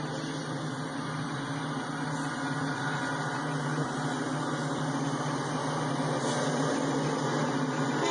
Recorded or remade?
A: recorded